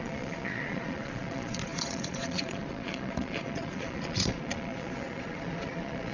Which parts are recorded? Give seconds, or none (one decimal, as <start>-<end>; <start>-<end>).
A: none